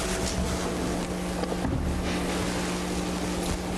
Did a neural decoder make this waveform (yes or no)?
no